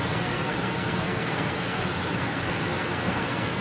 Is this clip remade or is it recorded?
remade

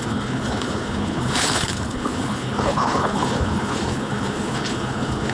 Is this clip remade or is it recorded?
remade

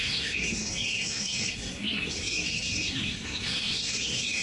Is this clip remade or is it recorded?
remade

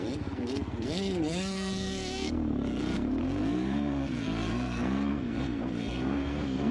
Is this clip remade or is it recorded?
remade